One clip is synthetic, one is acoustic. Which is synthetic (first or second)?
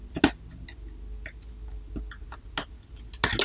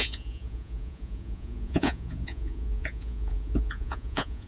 second